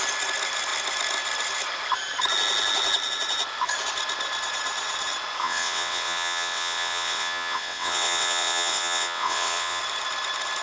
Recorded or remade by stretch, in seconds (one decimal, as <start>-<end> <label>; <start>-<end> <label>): 0.0-5.4 recorded; 5.4-9.8 remade; 9.8-10.6 recorded